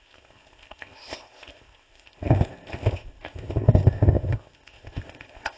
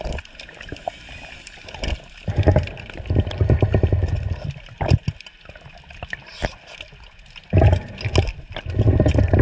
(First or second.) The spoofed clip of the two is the first